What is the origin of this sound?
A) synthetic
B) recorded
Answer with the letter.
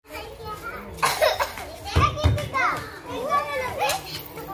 B